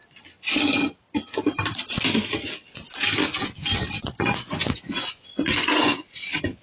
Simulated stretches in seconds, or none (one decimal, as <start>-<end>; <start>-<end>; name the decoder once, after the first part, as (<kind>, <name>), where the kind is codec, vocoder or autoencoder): 4.0-6.6 (vocoder, Vocos)